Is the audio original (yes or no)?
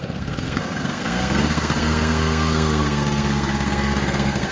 no